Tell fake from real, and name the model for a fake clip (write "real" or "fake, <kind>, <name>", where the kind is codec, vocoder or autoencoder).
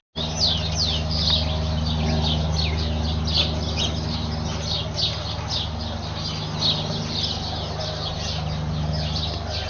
real